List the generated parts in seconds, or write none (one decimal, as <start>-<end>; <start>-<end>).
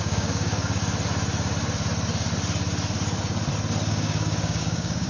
0.0-0.8; 3.9-5.1